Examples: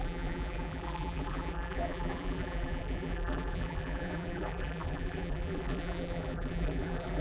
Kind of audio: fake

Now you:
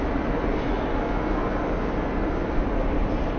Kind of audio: real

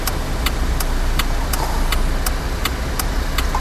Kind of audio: real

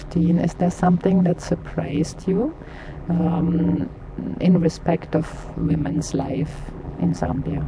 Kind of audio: fake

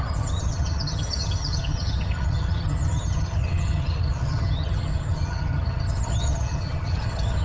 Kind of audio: fake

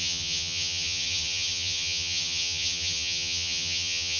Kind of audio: fake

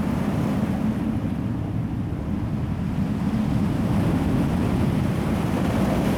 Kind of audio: real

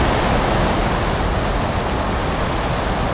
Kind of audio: real